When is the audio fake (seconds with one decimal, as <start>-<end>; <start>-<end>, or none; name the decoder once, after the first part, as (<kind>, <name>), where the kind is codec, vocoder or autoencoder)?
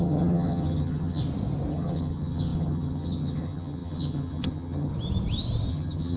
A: 0.0-1.2 (vocoder, HiFi-GAN); 1.7-4.9; 5.7-6.2